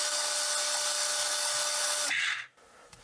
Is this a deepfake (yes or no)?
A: no